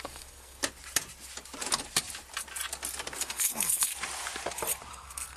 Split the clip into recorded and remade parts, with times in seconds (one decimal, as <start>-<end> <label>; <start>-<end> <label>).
0.0-0.6 remade; 0.6-3.2 recorded; 3.2-3.9 remade; 3.9-4.9 recorded; 4.9-5.4 remade